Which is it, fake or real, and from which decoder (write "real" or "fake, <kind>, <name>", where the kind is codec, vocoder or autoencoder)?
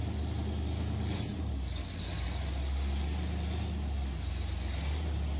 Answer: real